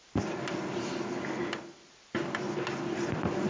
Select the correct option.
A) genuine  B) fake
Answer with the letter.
A